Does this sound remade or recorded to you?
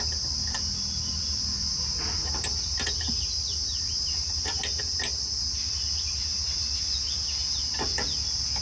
recorded